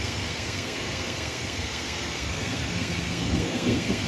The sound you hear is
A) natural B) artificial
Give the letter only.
B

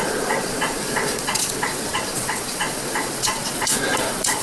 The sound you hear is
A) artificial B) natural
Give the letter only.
A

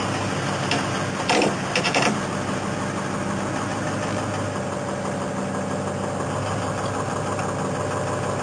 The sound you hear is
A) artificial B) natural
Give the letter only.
B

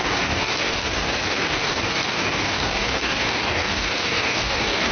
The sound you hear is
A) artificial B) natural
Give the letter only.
A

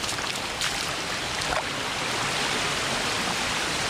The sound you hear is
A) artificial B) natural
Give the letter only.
A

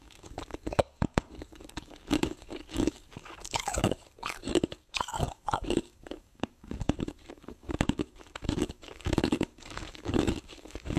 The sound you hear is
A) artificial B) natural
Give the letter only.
A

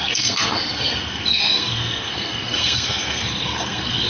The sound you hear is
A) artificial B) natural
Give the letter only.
A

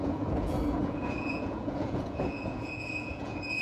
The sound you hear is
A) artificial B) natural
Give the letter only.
A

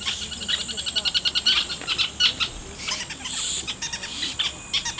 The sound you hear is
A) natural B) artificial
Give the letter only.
A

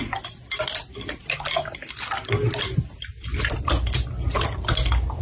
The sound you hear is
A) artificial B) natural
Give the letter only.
B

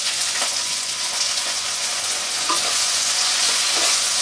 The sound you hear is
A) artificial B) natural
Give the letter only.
A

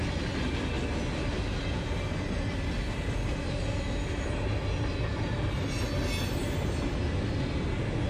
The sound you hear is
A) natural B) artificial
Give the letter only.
A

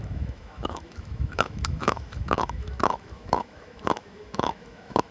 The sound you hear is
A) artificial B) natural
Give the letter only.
A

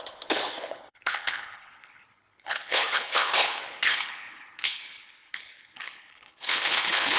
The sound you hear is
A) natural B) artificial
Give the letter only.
B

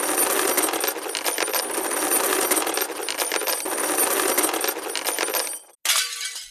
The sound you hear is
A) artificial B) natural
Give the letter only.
B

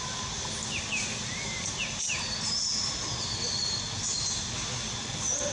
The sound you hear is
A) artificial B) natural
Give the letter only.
B